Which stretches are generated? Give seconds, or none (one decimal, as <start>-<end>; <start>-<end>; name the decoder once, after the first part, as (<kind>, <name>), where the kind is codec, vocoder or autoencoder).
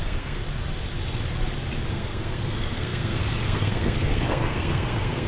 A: 0.0-0.4 (codec, SNAC); 1.9-5.3